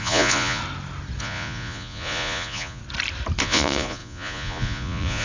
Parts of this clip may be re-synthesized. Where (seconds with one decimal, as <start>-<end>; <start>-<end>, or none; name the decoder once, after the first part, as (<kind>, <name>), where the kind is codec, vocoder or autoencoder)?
0.0-0.6 (vocoder, Vocos); 1.2-2.8; 3.4-5.2